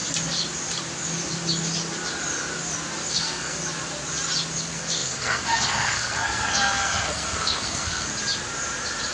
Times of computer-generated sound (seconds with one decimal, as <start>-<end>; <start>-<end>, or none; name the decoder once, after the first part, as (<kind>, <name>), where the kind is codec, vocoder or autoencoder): 3.1-3.6 (codec, SNAC); 4.6-8.1